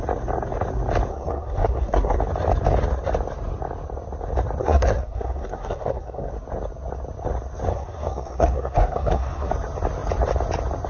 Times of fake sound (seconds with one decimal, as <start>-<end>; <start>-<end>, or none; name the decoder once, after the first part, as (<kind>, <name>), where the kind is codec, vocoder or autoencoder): 1.1-2.2 (codec, SNAC); 4.6-6.3; 7.7-9.5